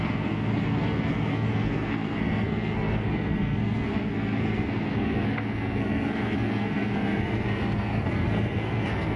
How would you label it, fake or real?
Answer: fake